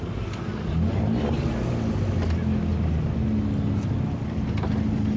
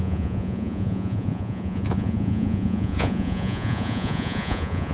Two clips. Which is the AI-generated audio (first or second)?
second